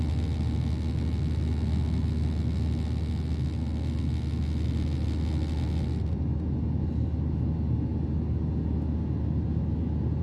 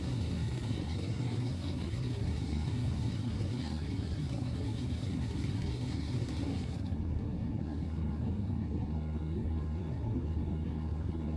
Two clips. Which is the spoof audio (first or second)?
second